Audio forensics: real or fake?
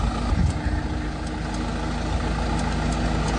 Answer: real